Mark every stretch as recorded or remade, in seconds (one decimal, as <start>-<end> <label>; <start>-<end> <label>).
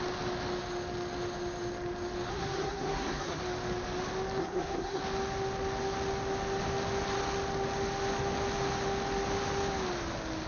0.0-2.3 recorded; 2.3-3.4 remade; 3.4-4.4 recorded; 4.4-5.0 remade; 5.0-10.5 recorded